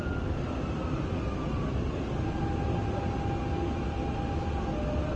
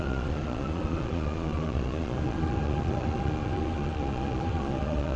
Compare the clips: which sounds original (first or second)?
first